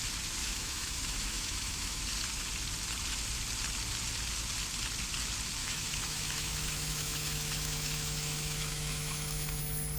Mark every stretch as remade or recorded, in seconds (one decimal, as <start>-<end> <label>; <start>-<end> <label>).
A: 0.0-0.4 recorded; 0.4-2.0 remade; 2.0-5.6 recorded; 5.6-9.6 remade; 9.6-10.0 recorded